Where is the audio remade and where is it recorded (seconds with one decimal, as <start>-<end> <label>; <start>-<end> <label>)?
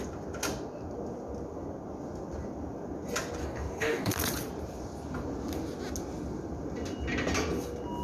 0.0-3.4 recorded; 3.4-4.1 remade; 4.1-8.0 recorded